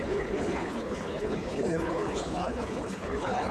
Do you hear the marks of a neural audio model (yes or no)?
yes